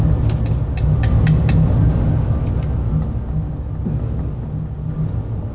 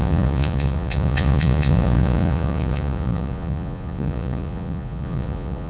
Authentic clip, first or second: first